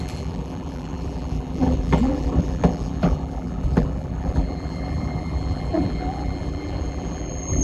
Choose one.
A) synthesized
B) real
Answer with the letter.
A